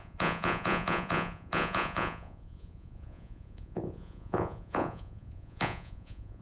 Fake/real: fake